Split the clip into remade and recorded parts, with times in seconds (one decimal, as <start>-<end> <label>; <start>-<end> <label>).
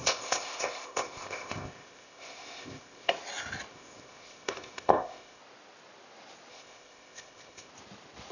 0.0-3.1 remade; 3.1-3.7 recorded; 3.7-5.4 remade; 5.4-6.5 recorded; 6.5-7.7 remade; 7.7-8.3 recorded